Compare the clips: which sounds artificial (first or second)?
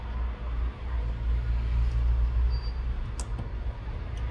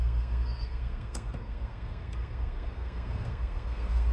second